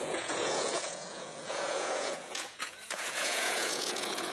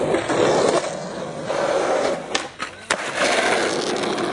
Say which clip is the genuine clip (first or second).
second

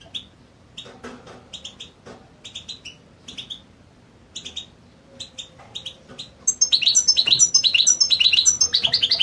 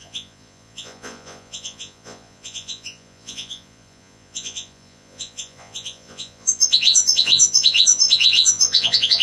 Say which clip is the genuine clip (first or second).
first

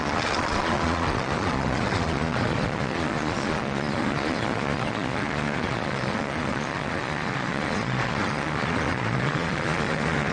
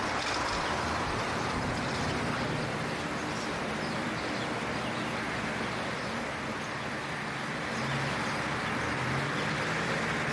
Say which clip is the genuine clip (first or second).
second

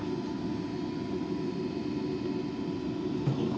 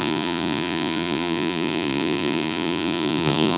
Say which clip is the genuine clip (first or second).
first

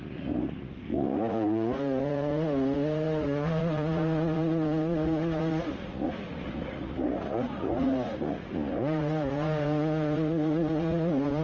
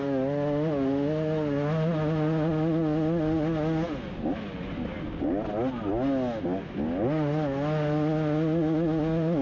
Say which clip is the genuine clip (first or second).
second